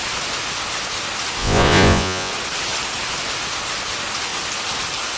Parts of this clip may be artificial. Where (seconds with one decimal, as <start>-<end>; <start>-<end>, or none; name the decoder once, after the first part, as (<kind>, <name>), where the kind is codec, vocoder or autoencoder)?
1.4-2.3 (vocoder, Vocos)